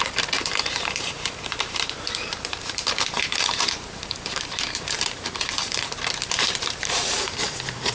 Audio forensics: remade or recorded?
remade